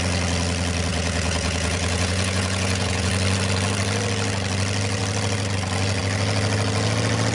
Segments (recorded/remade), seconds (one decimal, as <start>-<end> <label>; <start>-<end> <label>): 0.0-0.9 recorded; 0.9-3.1 remade; 3.1-7.3 recorded